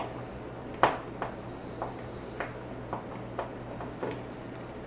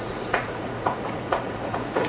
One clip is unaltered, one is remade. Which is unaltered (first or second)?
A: first